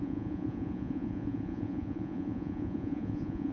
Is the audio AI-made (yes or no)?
yes